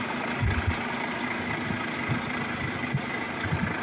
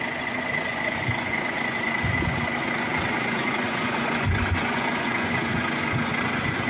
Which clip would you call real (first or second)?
first